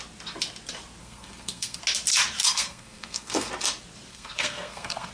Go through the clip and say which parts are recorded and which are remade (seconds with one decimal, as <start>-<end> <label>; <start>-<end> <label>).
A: 0.0-1.0 recorded; 1.0-1.8 remade; 1.8-2.4 recorded; 2.4-3.5 remade; 3.5-4.1 recorded; 4.1-5.1 remade